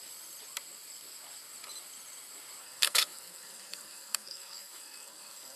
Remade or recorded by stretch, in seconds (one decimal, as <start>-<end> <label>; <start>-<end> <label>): 0.0-2.6 recorded; 2.6-5.6 remade